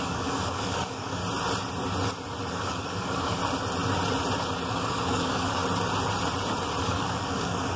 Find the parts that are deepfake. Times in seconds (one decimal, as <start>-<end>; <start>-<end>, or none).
0.0-1.2; 2.5-3.4; 4.7-5.6; 6.8-7.8